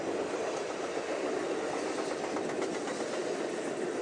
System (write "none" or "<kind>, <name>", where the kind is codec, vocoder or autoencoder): none